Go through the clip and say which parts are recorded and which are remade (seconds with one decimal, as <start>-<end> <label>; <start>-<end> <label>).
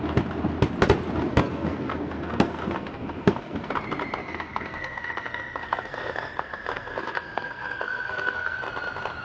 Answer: 0.0-1.3 recorded; 1.3-3.7 remade; 3.7-4.2 recorded; 4.2-8.6 remade; 8.6-9.2 recorded